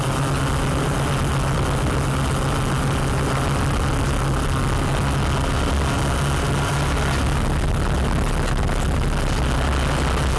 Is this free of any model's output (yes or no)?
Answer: yes